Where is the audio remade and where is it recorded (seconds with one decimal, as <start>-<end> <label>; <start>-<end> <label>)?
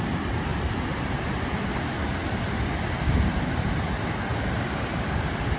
0.0-5.6 recorded